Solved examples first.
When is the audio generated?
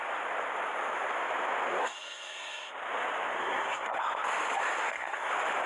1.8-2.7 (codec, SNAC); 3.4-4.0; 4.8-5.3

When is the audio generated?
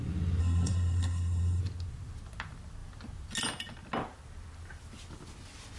0.4-1.6 (codec, SNAC)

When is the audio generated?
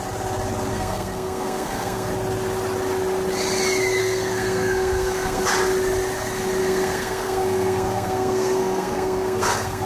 0.7-2.1 (codec, SNAC); 4.0-5.4; 6.6-9.9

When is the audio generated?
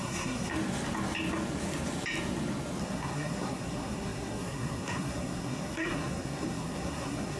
0.0-0.5 (codec, SNAC); 2.8-7.4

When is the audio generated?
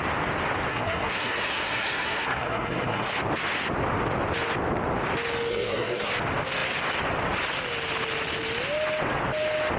0.7-3.1 (codec, SNAC); 5.5-6.1